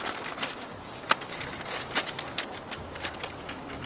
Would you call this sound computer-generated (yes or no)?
no